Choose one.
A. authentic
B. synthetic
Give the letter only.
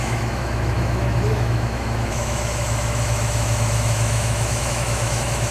B